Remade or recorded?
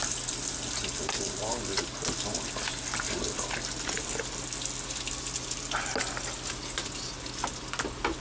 recorded